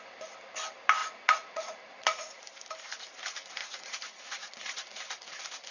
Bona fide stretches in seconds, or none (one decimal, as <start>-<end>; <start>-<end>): 0.0-1.0; 2.4-3.6; 5.0-5.7